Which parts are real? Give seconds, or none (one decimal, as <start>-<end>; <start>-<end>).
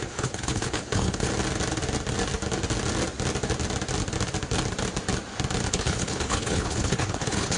1.3-5.7